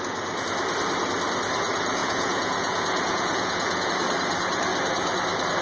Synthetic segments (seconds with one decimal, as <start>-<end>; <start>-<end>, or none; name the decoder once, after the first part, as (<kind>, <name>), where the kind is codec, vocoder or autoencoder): 2.0-3.9 (vocoder, Vocos)